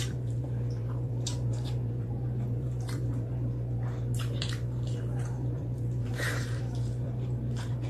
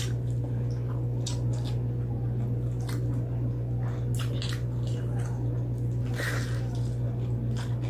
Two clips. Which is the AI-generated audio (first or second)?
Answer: first